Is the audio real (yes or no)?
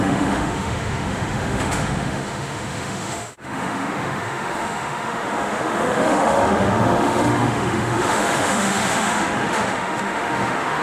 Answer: no